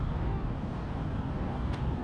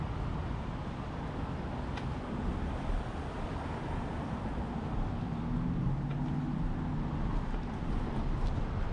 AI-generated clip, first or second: first